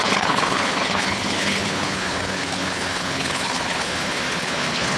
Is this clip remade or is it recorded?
remade